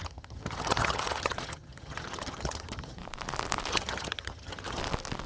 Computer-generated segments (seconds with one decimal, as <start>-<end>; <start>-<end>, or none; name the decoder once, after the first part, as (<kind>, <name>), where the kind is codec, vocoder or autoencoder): 0.0-3.0 (vocoder, HiFi-GAN); 3.7-4.8